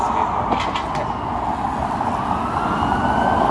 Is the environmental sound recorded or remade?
recorded